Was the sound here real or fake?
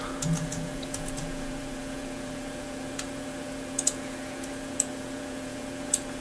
fake